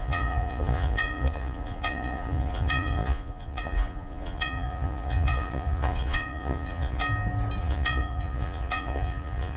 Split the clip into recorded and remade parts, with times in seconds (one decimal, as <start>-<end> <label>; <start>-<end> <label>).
0.0-7.0 remade; 7.0-7.6 recorded; 7.6-9.6 remade